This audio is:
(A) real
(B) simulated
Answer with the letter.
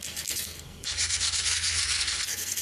B